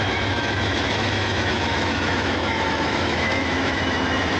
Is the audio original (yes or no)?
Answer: no